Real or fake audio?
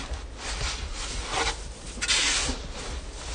real